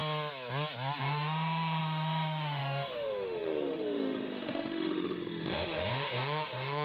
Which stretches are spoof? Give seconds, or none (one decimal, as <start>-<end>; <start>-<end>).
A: 1.0-6.8